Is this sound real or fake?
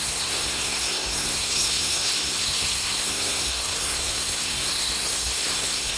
fake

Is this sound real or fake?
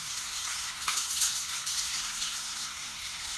fake